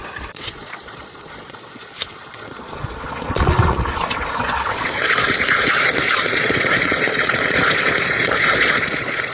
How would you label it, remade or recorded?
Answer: remade